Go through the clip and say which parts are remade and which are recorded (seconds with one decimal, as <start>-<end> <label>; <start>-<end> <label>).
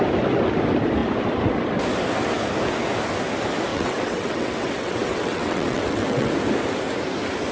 0.0-3.7 recorded; 3.7-6.3 remade; 6.3-7.5 recorded